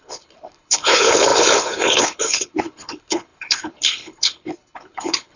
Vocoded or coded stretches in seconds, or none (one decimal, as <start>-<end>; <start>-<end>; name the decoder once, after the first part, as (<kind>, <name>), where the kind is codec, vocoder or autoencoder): 0.0-5.4 (codec, HILCodec)

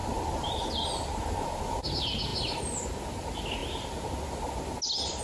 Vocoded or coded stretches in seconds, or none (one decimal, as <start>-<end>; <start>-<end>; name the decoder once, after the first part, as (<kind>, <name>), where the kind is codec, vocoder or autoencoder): none

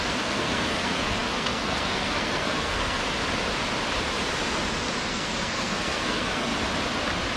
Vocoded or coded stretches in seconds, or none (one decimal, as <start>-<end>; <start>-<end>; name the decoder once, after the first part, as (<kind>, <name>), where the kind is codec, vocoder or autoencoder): 0.0-3.0 (codec, SNAC); 5.1-6.5